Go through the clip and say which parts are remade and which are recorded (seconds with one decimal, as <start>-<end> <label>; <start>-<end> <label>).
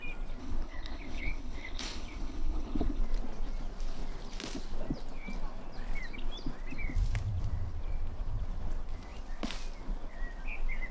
0.0-0.4 recorded; 0.4-3.0 remade; 3.0-10.9 recorded